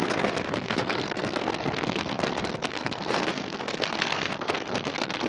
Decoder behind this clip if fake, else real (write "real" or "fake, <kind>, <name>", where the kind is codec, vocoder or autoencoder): fake, codec, SNAC